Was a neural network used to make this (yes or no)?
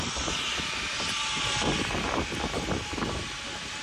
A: no